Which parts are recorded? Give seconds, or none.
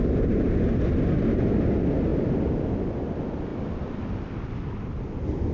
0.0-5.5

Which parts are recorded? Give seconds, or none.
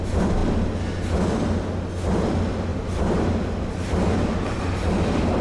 0.0-2.7; 3.2-5.4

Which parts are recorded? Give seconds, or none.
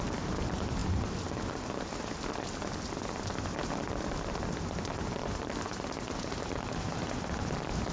0.8-4.3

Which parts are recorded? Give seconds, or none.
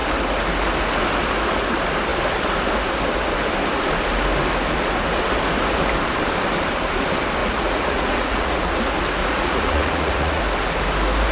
0.0-7.4; 8.6-9.2; 10.4-11.3